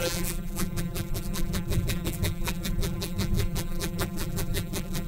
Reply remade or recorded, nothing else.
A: remade